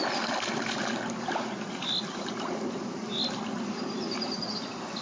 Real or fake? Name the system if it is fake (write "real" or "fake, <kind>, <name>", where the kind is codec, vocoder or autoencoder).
real